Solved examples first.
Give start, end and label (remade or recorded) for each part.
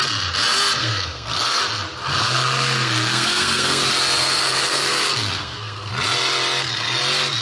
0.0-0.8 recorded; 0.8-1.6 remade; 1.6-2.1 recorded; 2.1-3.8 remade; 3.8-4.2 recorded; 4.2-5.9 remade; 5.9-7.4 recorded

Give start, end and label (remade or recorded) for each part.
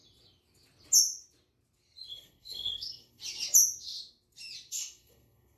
0.0-2.1 recorded; 2.1-3.2 remade; 3.2-4.7 recorded; 4.7-5.6 remade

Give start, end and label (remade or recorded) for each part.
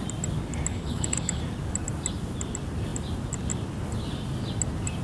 0.0-0.7 recorded; 0.7-1.4 remade; 1.4-5.0 recorded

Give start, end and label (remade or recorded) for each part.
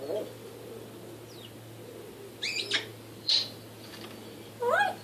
0.0-2.9 recorded; 2.9-4.0 remade; 4.0-5.0 recorded